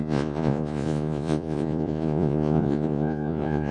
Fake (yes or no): yes